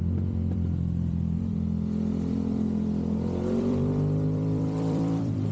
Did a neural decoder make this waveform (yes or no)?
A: yes